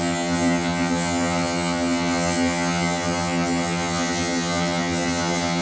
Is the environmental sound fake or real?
fake